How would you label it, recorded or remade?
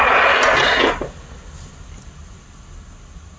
recorded